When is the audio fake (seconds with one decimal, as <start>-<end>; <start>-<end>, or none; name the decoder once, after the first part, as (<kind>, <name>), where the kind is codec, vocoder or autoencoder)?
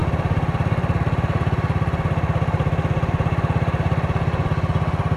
none